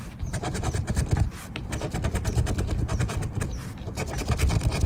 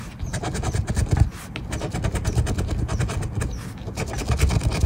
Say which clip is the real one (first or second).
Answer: second